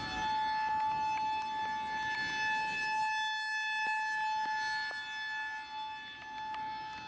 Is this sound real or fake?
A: real